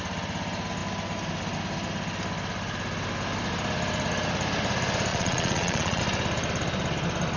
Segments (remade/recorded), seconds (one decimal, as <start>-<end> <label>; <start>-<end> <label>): 0.0-5.1 recorded; 5.1-6.0 remade; 6.0-7.4 recorded